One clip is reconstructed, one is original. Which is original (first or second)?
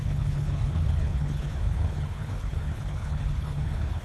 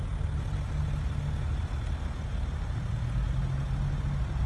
second